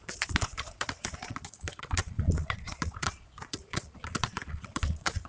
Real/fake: fake